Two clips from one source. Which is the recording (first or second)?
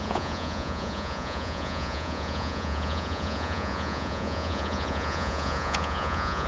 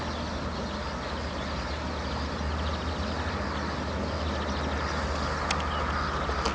second